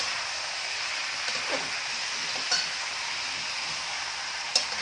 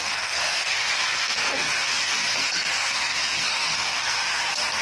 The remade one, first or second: second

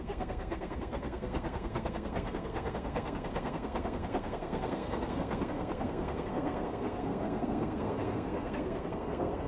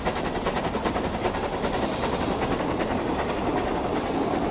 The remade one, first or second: first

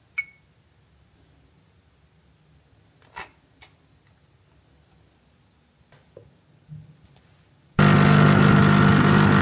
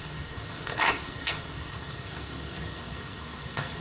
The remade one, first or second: second